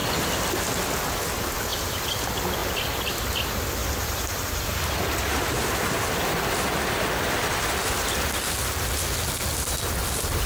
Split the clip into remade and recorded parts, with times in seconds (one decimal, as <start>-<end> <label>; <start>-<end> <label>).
0.0-10.5 recorded